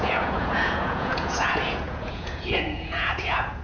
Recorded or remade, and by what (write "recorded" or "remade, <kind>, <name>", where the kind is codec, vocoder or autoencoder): remade, vocoder, Vocos